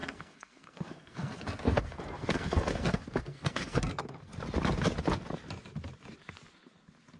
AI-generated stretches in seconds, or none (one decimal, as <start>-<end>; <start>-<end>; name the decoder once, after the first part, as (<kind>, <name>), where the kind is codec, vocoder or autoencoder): 0.0-4.3 (codec, SNAC)